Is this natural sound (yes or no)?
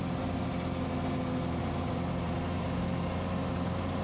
yes